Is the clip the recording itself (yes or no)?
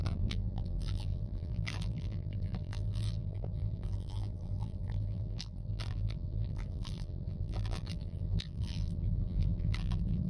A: no